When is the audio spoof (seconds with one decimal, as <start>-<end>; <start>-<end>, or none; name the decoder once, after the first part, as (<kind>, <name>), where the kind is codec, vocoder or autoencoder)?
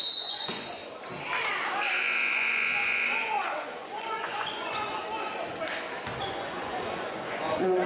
0.0-0.8 (vocoder, Vocos); 2.0-5.0; 6.2-7.9